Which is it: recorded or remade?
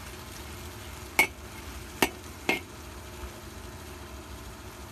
recorded